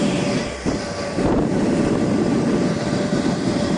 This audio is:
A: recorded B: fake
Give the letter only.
B